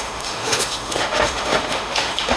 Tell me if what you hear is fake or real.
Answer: fake